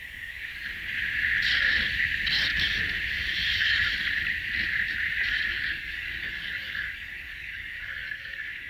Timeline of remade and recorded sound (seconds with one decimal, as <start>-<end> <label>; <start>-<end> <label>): 0.0-0.5 remade; 0.5-5.5 recorded; 5.5-8.7 remade